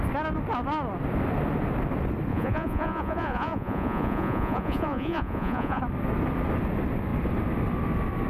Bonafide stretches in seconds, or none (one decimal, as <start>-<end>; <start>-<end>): 0.0-2.3; 5.8-8.3